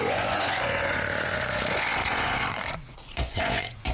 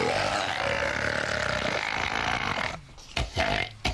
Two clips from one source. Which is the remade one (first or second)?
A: first